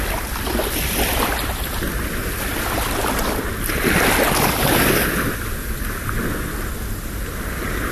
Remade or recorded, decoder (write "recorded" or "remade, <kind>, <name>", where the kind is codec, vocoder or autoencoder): recorded